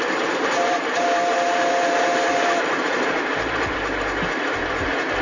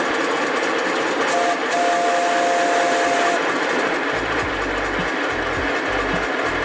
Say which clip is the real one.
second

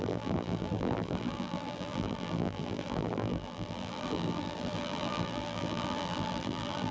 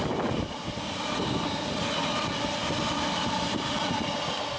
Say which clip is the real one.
second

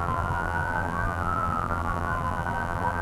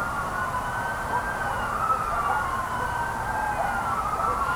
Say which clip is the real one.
second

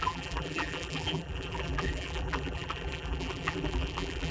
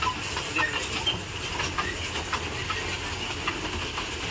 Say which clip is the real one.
second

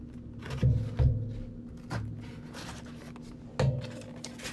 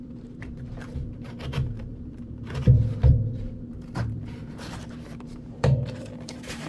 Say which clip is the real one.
first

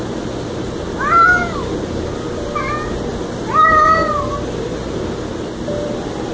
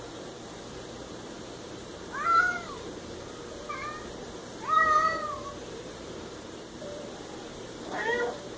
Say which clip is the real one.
first